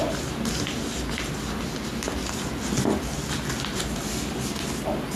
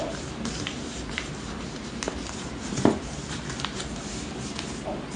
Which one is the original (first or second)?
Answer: first